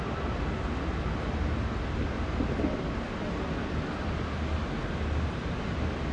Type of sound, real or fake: real